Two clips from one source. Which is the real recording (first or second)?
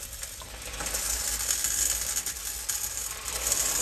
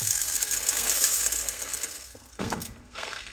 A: first